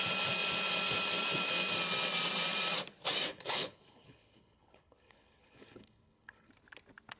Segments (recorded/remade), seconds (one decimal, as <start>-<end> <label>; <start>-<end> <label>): 0.0-3.3 recorded; 3.3-6.5 remade; 6.5-7.2 recorded